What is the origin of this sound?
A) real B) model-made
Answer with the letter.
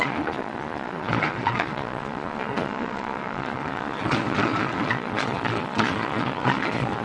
B